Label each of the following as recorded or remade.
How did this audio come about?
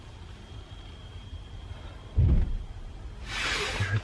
recorded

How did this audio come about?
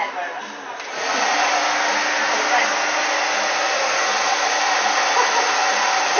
recorded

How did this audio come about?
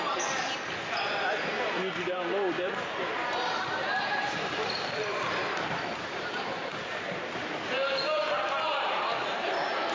remade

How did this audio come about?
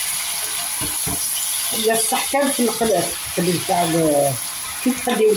recorded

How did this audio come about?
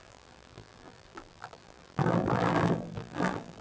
remade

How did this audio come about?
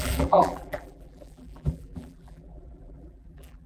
remade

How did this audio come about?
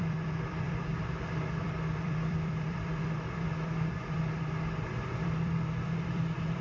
remade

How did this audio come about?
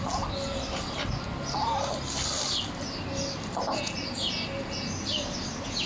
recorded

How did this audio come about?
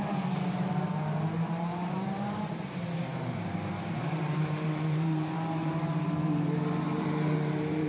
remade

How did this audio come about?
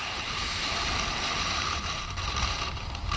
remade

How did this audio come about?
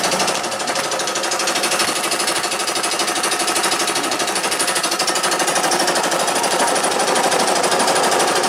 remade